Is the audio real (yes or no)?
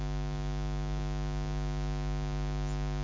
yes